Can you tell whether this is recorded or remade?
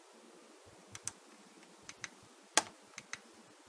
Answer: recorded